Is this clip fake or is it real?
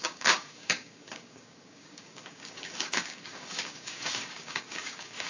fake